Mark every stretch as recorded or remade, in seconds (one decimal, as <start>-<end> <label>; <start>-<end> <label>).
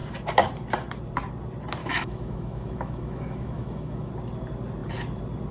0.0-1.8 recorded; 1.8-4.1 remade; 4.1-5.5 recorded